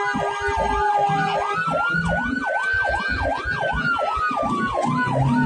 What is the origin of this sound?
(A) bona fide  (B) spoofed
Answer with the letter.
A